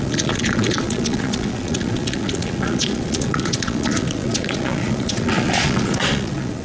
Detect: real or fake fake